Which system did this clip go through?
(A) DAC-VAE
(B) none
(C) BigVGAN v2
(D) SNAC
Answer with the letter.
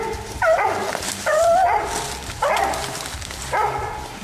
B